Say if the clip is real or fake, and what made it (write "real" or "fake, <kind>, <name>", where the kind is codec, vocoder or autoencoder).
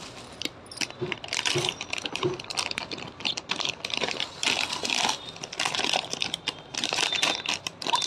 fake, vocoder, BigVGAN v2